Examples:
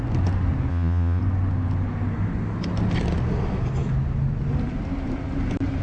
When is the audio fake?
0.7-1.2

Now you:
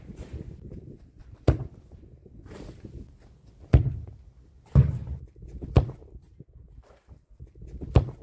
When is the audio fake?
none

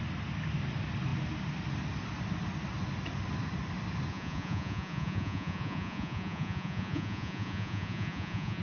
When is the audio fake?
4.1-8.6

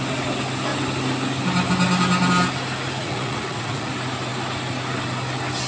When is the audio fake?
3.0-3.9

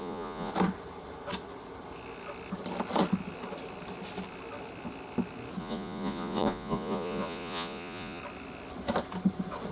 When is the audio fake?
0.0-0.5; 5.6-8.2